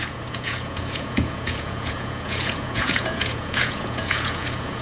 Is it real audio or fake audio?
fake